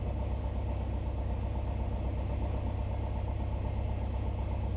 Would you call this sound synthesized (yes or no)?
no